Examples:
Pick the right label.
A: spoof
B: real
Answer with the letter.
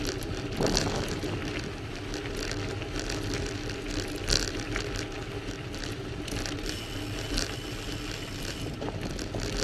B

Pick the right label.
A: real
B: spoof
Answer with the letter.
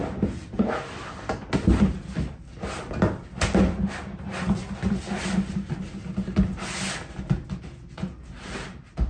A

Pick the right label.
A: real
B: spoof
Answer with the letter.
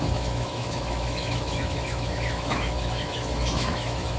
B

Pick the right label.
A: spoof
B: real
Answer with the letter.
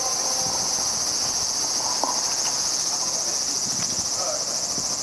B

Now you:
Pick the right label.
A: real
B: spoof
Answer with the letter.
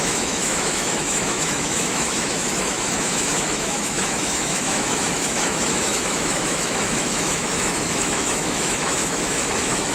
B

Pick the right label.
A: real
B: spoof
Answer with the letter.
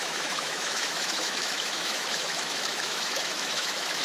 B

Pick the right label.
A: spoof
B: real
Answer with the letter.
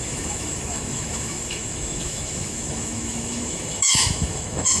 A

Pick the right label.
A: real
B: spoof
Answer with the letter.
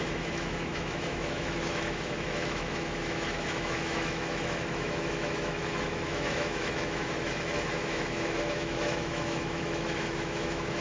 B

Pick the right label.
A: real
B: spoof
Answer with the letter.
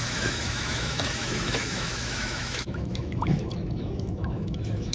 B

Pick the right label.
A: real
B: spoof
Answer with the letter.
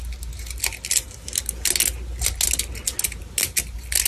A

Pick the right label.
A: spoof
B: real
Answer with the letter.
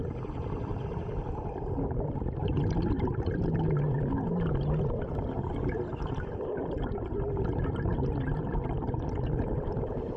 B